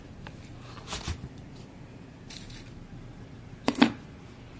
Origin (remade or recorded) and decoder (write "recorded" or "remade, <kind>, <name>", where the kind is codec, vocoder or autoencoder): recorded